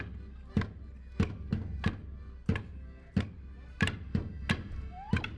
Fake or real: real